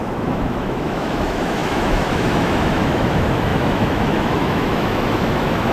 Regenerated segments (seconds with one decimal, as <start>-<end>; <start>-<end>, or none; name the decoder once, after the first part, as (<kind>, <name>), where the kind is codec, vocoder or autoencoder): 0.0-5.7 (autoencoder, DAC-VAE)